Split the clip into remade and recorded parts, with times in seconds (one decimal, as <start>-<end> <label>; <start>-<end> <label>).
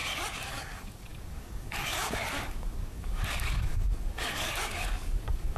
0.0-0.5 recorded; 0.5-5.6 remade